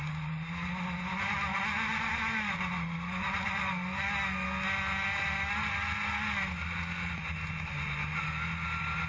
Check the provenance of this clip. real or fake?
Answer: real